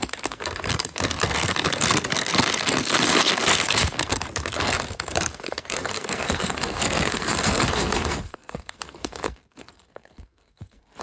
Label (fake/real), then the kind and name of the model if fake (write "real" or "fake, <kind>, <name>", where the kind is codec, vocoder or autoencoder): fake, codec, SNAC